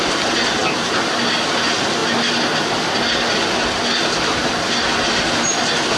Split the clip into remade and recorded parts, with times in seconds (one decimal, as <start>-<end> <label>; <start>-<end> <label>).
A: 0.0-6.0 recorded